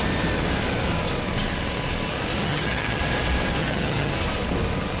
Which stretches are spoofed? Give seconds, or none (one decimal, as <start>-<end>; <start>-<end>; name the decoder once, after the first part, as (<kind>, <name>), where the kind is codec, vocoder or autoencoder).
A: 2.4-3.0 (vocoder, HiFi-GAN); 3.6-4.1